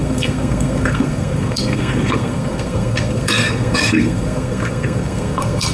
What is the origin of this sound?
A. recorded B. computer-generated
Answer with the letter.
B